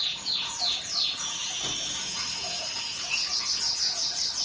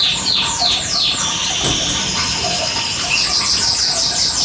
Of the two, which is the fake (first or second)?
first